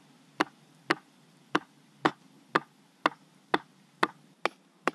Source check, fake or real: real